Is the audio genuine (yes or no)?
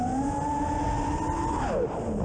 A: yes